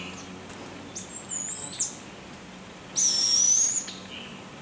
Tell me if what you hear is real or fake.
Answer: real